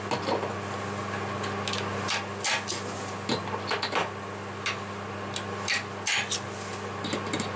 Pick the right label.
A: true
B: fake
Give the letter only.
A